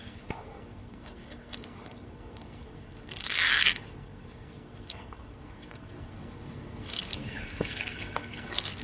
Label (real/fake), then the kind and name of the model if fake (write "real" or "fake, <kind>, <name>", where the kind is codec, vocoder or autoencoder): fake, codec, SNAC